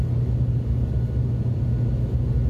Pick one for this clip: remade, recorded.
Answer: recorded